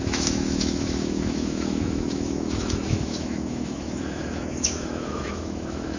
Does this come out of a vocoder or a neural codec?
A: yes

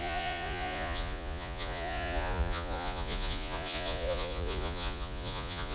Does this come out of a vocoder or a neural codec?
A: yes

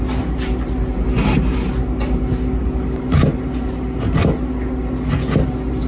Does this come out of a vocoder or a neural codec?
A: no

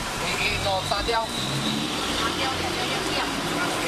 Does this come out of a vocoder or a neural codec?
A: yes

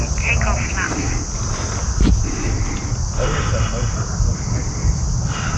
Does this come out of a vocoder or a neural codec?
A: no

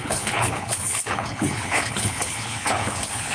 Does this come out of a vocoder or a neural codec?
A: yes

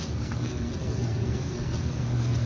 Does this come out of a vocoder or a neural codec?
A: yes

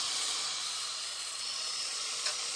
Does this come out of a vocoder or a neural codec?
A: yes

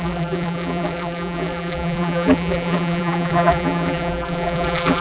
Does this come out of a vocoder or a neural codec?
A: yes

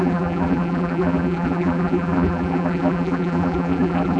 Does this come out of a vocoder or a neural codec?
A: yes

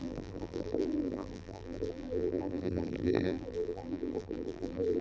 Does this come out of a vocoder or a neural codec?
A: yes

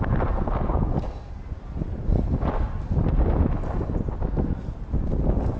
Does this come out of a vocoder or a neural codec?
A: no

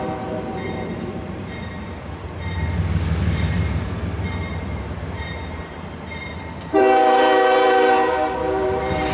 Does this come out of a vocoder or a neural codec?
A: yes